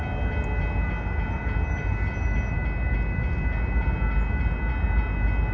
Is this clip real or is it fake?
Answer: real